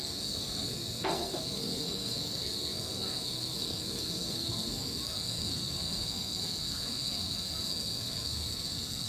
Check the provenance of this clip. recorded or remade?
remade